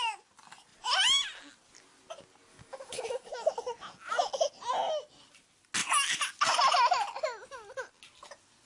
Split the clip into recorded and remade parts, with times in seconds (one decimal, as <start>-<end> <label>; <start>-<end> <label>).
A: 0.0-2.5 recorded; 2.5-3.5 remade; 3.5-8.7 recorded